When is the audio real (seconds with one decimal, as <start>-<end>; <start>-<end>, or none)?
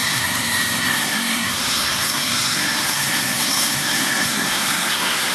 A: none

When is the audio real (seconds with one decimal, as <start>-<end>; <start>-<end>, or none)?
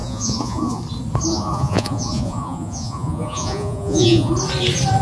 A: 0.8-1.3; 4.3-5.0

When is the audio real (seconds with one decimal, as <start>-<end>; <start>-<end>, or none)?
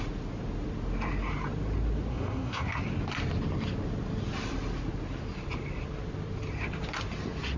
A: 0.0-2.1; 2.8-7.6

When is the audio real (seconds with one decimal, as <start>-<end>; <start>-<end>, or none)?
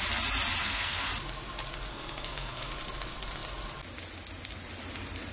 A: 0.0-0.6; 1.1-1.9; 2.7-5.3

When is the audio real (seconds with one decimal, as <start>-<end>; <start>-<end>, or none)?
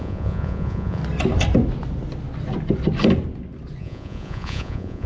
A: 1.0-3.8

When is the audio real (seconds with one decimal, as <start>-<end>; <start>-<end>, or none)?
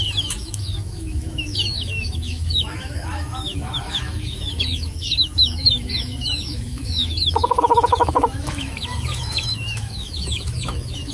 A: none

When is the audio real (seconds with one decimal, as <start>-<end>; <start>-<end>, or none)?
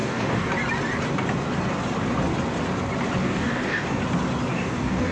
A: 0.5-3.2; 4.0-4.5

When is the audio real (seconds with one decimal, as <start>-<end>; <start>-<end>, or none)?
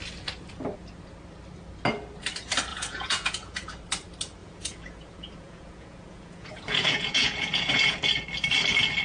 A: 0.0-2.7; 3.7-4.4; 8.0-9.0